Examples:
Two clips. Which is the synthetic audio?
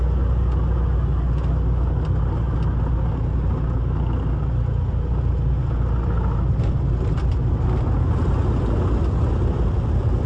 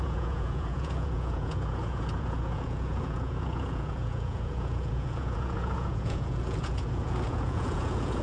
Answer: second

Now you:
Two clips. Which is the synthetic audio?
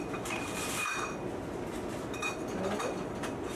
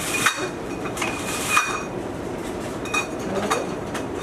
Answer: second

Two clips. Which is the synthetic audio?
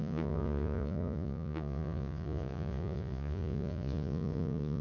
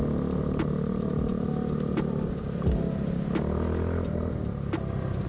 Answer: first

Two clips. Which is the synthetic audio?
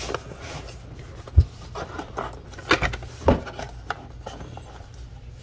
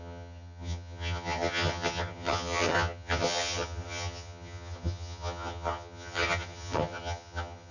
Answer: second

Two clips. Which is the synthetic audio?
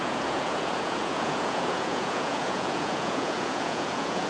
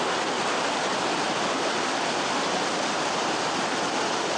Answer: first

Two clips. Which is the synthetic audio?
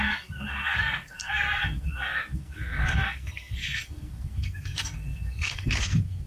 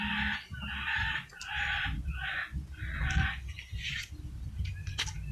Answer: first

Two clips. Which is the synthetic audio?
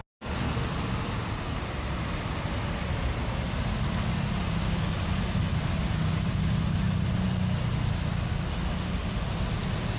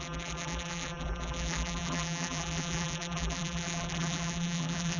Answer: second